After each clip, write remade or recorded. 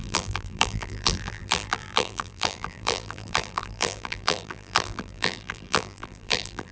remade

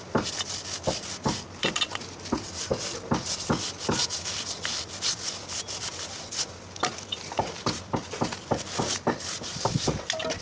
remade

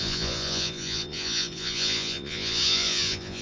remade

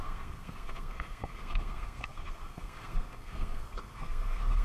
remade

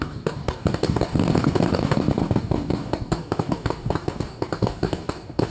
remade